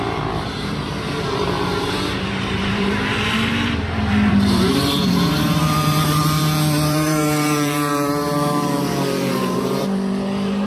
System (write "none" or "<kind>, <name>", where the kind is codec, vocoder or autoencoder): vocoder, BigVGAN v2